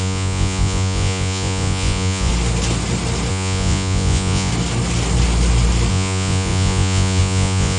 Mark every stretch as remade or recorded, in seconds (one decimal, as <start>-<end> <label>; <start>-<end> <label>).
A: 0.0-2.3 remade; 2.3-3.3 recorded; 3.3-4.5 remade; 4.5-5.9 recorded; 5.9-7.8 remade

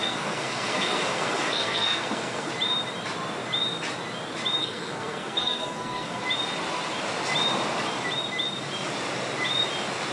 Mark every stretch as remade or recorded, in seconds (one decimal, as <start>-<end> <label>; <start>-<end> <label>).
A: 0.0-2.5 remade; 2.5-4.6 recorded; 4.6-6.2 remade; 6.2-10.1 recorded